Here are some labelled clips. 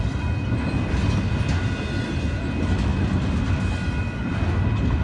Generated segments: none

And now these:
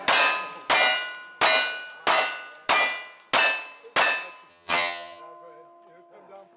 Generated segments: 4.5-5.2

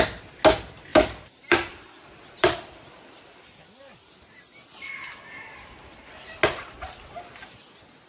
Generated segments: 0.9-4.4

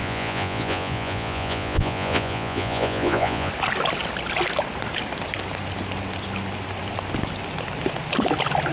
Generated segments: 0.0-3.5

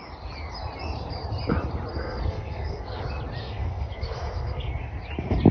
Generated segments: 1.9-3.0; 3.4-4.7

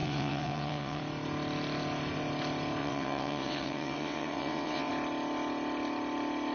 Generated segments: 0.0-1.0; 2.8-4.9

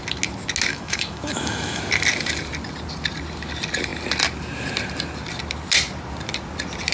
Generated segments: 0.7-1.8

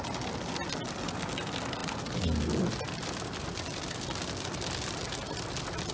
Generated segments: none